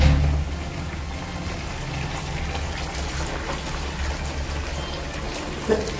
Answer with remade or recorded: recorded